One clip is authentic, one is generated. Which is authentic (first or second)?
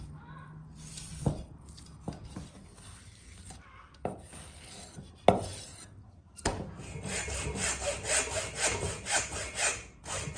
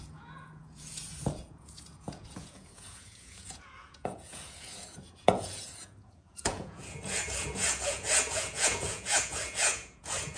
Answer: first